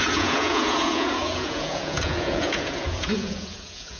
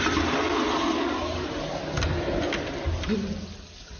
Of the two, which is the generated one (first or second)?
first